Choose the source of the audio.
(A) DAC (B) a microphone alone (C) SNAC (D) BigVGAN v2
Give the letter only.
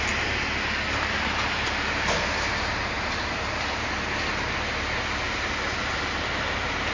B